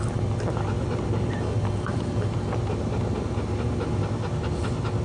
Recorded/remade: recorded